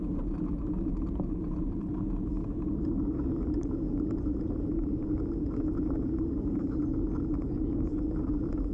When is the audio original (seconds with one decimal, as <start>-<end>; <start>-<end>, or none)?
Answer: 1.9-3.0